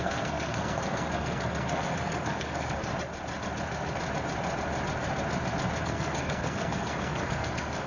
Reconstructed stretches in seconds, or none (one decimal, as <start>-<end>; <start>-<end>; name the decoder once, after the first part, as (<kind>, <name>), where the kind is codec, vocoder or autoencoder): 0.0-2.9 (codec, SNAC); 5.8-7.9